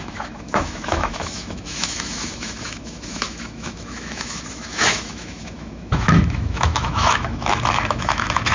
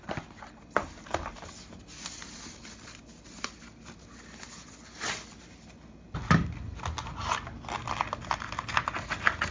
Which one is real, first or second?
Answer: second